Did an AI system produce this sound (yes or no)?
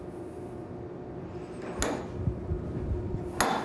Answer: no